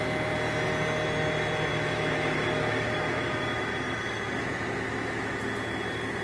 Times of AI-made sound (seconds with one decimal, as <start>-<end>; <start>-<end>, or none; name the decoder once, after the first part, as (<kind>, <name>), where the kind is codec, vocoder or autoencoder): 1.7-5.4 (autoencoder, DAC-VAE)